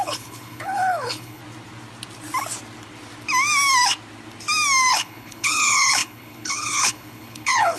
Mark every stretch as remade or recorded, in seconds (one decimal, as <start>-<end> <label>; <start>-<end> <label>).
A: 0.0-1.4 remade; 1.4-4.9 recorded; 4.9-7.8 remade